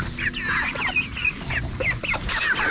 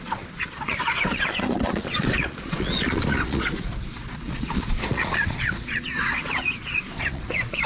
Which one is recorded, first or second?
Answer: first